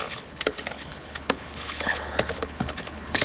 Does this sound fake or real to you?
fake